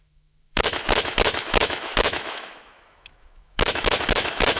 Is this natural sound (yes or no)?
no